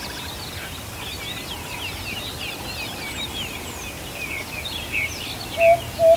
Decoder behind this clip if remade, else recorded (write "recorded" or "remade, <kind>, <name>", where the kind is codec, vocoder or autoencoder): recorded